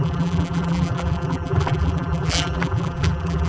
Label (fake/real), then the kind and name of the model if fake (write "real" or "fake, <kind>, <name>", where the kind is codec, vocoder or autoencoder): fake, vocoder, BigVGAN v2